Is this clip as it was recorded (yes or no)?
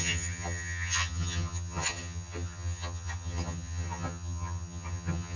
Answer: no